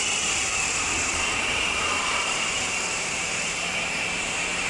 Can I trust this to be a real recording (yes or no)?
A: no